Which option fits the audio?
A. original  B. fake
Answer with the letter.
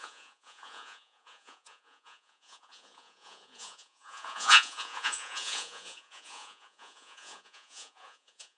B